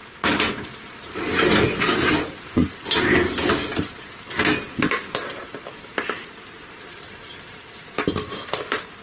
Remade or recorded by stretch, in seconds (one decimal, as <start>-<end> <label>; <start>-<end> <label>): 0.0-9.0 recorded